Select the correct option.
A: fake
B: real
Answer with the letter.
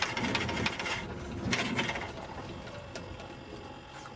B